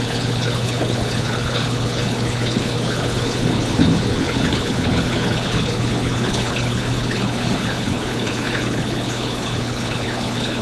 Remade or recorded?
remade